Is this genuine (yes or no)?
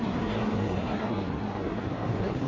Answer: no